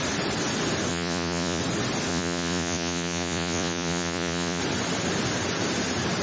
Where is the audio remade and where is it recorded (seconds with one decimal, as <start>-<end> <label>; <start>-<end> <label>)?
0.0-0.9 recorded; 0.9-1.6 remade; 1.6-2.1 recorded; 2.1-4.6 remade; 4.6-6.2 recorded